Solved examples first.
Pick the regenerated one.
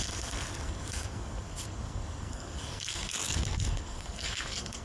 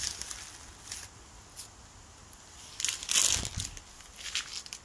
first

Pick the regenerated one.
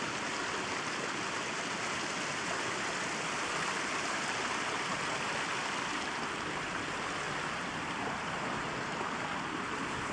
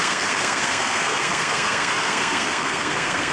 second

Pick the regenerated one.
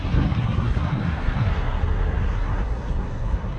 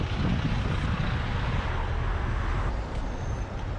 first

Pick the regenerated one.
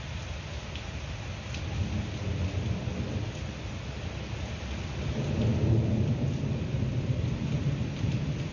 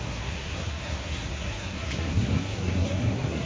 second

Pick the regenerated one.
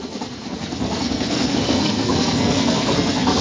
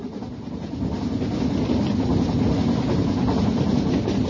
first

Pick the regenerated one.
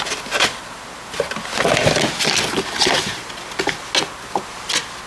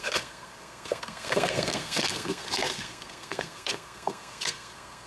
second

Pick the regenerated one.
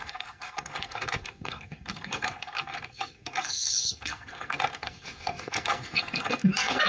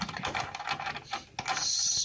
first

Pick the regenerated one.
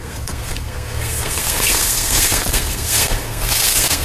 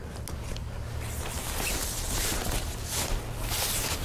first